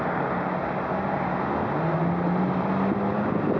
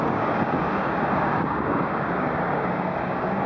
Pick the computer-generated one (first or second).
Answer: second